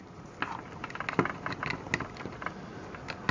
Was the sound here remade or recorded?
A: recorded